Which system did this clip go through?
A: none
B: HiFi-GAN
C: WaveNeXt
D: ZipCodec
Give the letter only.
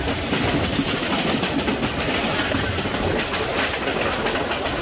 A